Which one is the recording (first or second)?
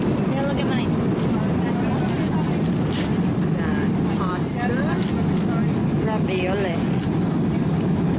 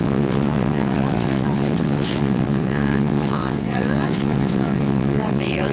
first